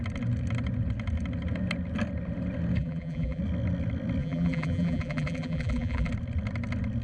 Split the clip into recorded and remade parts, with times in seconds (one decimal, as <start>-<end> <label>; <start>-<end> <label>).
0.0-2.8 recorded; 2.8-3.4 remade; 3.4-4.2 recorded; 4.2-6.1 remade; 6.1-7.0 recorded